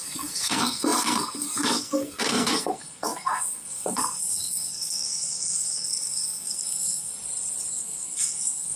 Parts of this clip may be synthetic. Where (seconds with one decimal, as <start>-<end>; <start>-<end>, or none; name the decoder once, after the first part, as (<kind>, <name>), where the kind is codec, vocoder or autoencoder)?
0.0-7.1 (codec, SNAC); 7.7-8.8